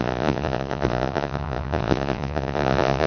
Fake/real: fake